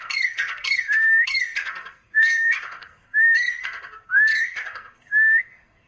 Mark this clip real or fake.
fake